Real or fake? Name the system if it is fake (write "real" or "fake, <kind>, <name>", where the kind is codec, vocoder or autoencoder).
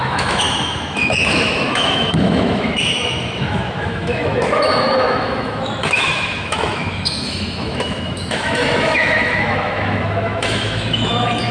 fake, autoencoder, DAC-VAE